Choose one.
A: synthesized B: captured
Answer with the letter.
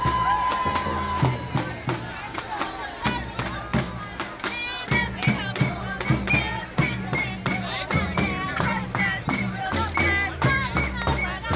B